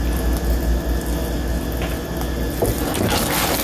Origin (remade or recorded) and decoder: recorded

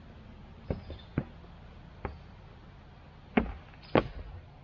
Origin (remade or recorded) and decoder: recorded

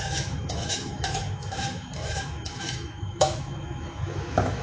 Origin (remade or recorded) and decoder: remade, autoencoder, DAC-VAE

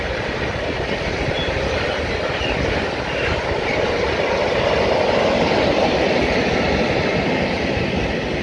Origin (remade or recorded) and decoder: recorded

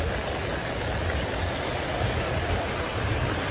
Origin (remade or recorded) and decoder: recorded